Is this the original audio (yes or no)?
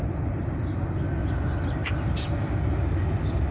yes